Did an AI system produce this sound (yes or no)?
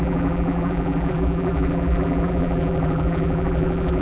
yes